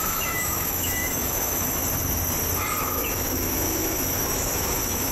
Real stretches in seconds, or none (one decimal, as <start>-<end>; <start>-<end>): 1.8-2.8